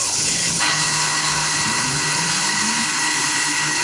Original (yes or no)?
no